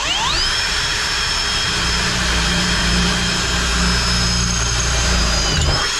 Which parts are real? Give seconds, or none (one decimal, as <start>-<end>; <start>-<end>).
3.7-4.6